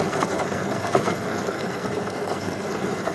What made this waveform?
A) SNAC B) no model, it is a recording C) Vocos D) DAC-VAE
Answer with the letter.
A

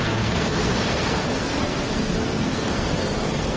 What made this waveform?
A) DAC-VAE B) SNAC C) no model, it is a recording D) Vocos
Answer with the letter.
B